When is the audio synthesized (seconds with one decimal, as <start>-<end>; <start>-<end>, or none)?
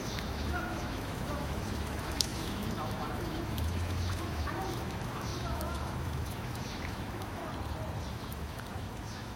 0.0-7.4; 8.1-9.4